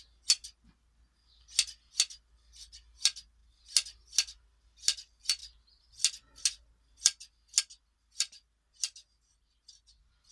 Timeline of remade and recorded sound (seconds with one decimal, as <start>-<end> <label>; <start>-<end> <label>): 0.0-10.3 recorded